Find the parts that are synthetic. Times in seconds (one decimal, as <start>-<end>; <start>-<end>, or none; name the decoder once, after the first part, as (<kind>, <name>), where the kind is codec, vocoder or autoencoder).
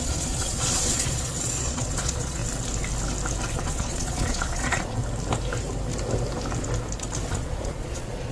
0.0-2.4 (vocoder, Vocos); 3.5-5.0; 7.3-8.3